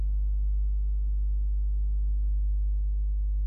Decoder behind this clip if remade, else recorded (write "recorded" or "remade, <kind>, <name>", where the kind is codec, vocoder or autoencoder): remade, autoencoder, DAC-VAE